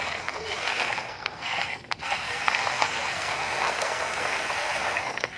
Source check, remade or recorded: remade